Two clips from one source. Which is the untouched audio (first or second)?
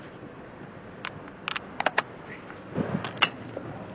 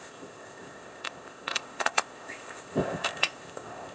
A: first